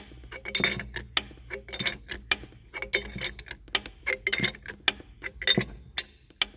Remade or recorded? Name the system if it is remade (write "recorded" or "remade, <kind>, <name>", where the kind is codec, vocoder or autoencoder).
recorded